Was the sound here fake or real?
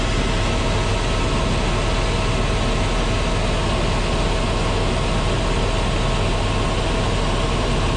real